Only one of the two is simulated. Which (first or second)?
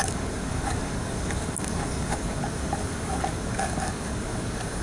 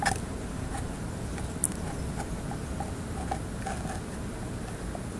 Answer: first